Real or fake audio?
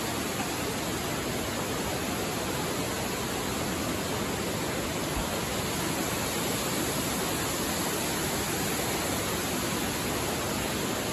real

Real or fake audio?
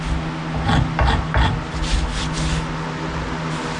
real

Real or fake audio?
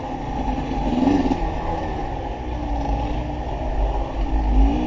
real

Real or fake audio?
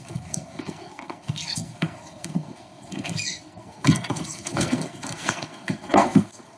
fake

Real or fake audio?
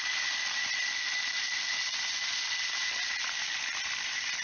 real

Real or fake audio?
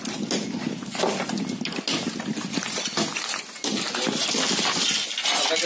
real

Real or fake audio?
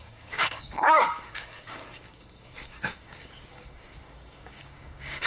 fake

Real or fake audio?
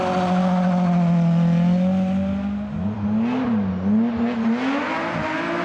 real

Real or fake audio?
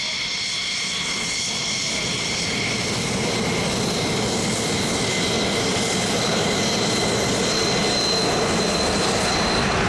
real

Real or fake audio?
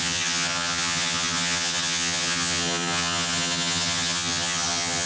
fake